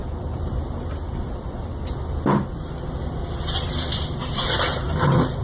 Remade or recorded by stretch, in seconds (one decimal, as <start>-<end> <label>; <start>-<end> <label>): 0.0-1.2 remade; 1.2-5.4 recorded